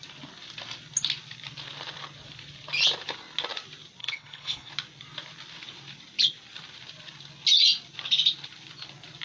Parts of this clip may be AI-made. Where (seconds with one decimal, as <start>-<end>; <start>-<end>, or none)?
4.0-4.7